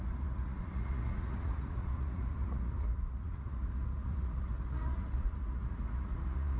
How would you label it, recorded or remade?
remade